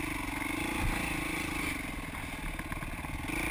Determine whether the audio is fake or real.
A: real